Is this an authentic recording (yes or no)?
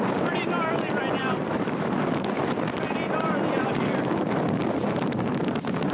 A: no